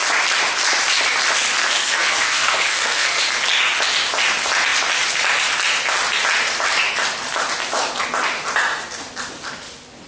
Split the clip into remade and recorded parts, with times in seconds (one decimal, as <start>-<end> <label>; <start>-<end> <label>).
0.0-1.6 recorded; 1.6-3.2 remade; 3.2-10.1 recorded

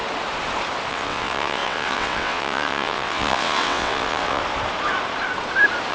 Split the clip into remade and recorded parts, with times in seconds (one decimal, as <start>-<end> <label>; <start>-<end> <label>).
0.0-0.9 recorded; 0.9-4.4 remade; 4.4-5.9 recorded

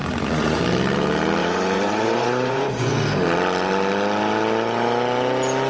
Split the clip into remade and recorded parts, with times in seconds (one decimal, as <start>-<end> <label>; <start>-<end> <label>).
0.0-0.6 remade; 0.6-1.4 recorded; 1.4-2.9 remade; 2.9-5.7 recorded

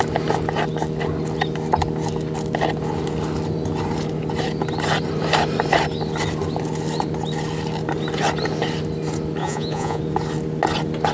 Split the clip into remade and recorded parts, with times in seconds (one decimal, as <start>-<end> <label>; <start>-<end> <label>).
0.0-9.4 recorded; 9.4-10.0 remade; 10.0-11.1 recorded

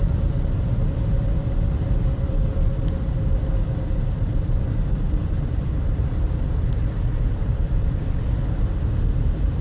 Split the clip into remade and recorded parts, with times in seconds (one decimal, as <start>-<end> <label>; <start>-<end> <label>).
0.0-5.2 recorded; 5.2-8.3 remade; 8.3-9.6 recorded

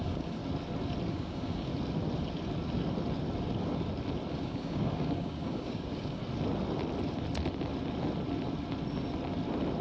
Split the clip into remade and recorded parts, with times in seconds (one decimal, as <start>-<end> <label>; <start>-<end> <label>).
0.0-0.4 remade; 0.4-1.1 recorded; 1.1-1.7 remade; 1.7-4.3 recorded; 4.3-6.2 remade; 6.2-9.8 recorded

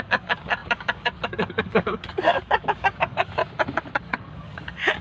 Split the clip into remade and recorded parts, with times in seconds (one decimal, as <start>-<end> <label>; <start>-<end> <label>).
0.0-3.4 remade; 3.4-4.0 recorded; 4.0-5.0 remade

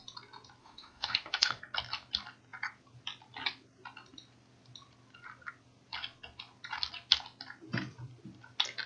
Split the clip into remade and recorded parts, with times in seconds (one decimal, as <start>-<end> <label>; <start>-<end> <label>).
0.0-0.6 recorded; 0.6-1.6 remade; 1.6-8.9 recorded